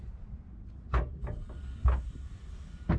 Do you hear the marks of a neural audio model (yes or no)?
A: no